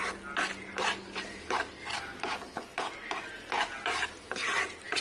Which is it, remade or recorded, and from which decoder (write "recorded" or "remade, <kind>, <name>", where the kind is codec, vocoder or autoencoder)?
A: recorded